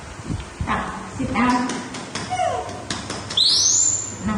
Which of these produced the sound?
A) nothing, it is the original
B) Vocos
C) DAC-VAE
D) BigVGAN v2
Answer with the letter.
A